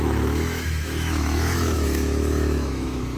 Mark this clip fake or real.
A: fake